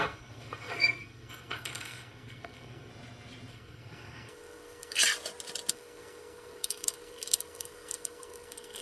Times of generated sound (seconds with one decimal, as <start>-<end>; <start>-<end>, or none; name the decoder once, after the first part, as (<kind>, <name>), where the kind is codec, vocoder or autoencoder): 0.0-2.9 (codec, SNAC); 3.5-5.0; 5.7-8.8

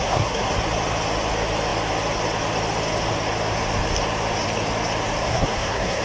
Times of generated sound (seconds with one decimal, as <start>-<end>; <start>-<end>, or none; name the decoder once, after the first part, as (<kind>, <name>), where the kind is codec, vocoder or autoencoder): 0.0-0.5 (codec, SNAC); 5.3-6.0

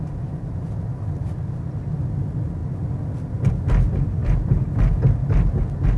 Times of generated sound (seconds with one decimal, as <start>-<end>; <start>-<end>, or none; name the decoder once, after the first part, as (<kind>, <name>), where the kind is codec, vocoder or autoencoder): none

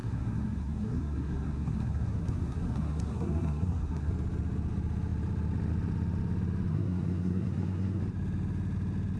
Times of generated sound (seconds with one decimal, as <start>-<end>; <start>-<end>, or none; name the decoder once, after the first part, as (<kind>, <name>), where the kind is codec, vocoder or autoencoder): 0.0-4.1 (codec, SNAC); 6.7-8.0